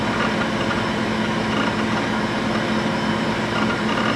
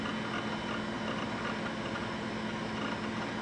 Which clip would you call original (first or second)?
second